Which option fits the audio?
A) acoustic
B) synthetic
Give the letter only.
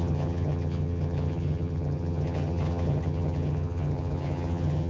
B